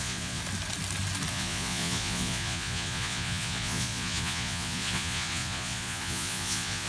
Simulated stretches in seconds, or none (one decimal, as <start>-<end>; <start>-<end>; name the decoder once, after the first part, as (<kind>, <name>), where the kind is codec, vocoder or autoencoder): 0.0-0.4 (vocoder, Vocos); 1.3-6.9